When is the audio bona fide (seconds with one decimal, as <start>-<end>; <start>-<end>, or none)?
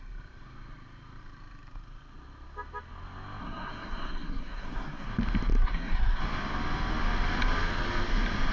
0.0-3.4; 5.1-5.6; 6.2-8.5